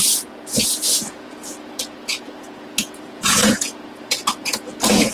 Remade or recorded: remade